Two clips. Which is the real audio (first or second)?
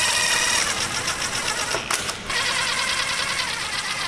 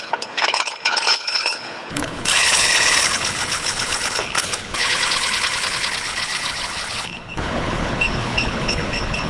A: first